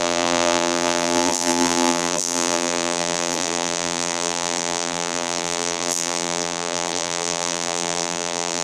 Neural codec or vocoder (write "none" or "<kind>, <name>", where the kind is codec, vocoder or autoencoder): vocoder, BigVGAN v2